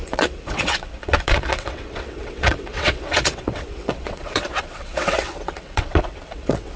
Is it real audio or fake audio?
fake